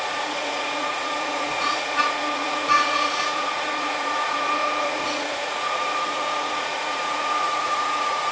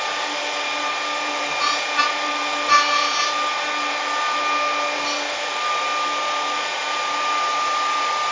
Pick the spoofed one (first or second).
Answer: first